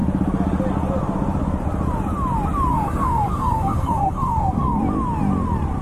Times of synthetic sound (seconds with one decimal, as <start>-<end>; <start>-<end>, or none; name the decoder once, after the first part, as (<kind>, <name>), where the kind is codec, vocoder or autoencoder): 2.7-4.8 (codec, SNAC)